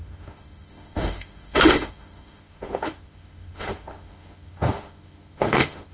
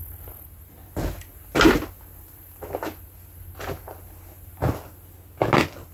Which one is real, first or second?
second